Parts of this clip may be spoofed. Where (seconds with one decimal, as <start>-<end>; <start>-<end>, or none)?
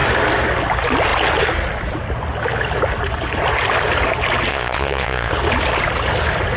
4.5-5.3